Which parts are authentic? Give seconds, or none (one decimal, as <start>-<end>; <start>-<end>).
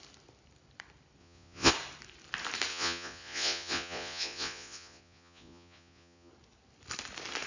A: 0.0-1.2; 1.7-2.7; 6.3-7.5